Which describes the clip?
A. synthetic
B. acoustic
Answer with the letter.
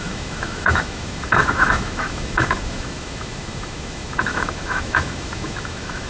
A